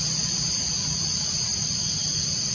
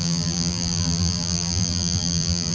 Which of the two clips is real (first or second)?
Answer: first